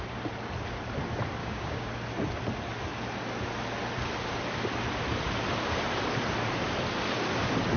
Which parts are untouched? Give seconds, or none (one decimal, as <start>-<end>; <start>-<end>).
0.0-1.4; 1.9-7.8